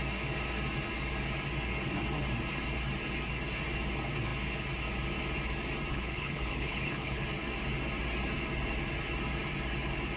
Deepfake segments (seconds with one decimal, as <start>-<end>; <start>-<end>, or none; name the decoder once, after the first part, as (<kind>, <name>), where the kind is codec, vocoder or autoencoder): 5.9-7.2 (codec, HILCodec)